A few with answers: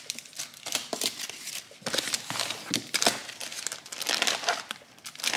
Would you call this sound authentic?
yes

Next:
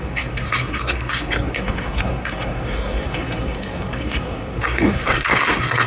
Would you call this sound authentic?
no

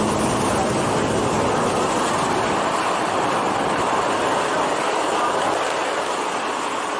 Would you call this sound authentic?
yes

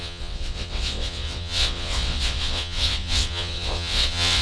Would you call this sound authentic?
no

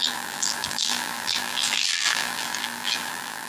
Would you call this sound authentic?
no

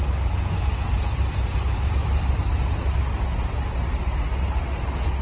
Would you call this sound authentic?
yes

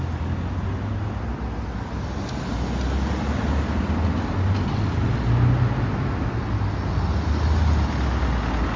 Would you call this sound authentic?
yes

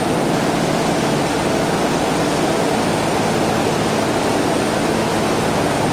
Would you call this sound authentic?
yes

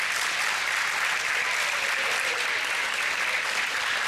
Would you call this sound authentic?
yes